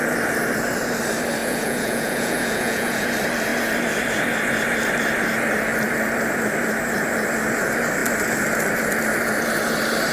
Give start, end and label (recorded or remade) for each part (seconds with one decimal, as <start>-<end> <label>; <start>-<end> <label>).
0.0-1.4 recorded; 1.4-3.1 remade; 3.1-10.1 recorded